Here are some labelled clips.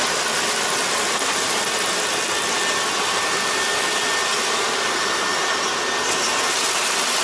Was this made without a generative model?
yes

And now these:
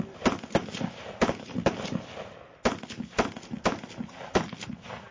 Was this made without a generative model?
yes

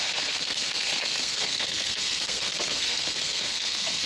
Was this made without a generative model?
no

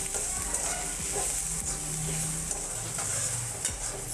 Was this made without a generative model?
yes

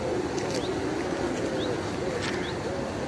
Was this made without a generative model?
yes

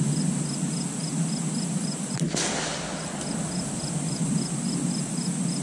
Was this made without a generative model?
yes